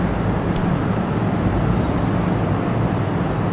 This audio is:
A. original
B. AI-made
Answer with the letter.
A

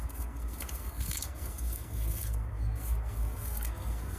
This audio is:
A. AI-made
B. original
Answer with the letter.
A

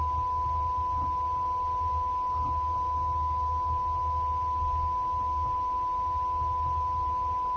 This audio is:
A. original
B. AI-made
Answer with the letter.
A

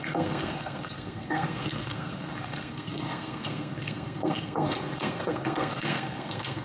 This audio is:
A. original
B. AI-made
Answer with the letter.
B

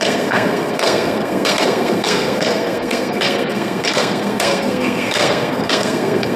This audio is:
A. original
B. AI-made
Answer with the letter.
B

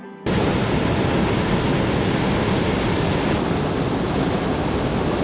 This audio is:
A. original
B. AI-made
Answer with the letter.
A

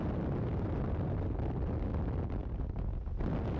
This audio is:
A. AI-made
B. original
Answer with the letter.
B